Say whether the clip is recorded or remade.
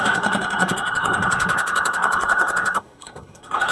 remade